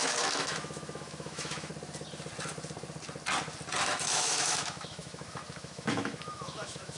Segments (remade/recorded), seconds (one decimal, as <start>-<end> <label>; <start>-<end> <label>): 0.0-1.7 remade; 1.7-3.8 recorded; 3.8-7.0 remade